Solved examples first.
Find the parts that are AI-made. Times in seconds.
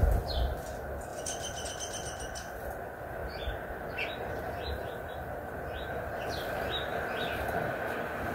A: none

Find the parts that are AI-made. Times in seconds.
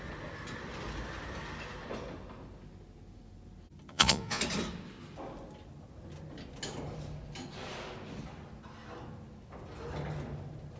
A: 3.9-4.4 (vocoder, Vocos)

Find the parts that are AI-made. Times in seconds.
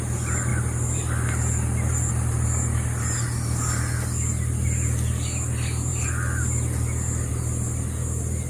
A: none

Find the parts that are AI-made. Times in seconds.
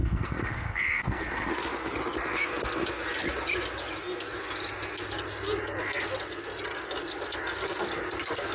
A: 0.0-1.5 (codec, SNAC)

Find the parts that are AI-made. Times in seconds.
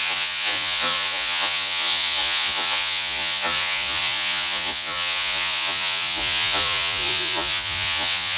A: 0.0-8.4 (vocoder, Vocos)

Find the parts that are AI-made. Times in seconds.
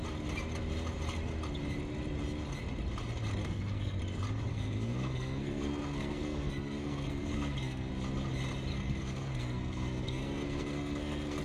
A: 3.4-4.0 (codec, SNAC); 4.5-7.9; 8.7-11.4